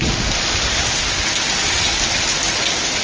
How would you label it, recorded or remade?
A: recorded